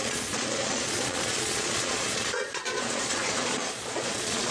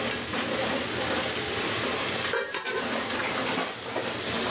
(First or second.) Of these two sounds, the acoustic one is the second